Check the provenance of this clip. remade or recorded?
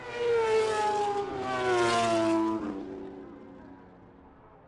recorded